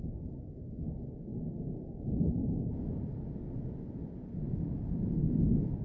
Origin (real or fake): real